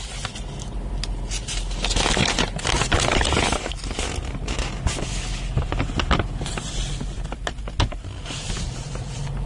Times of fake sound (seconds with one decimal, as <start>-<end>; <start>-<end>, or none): none